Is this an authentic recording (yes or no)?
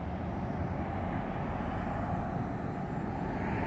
yes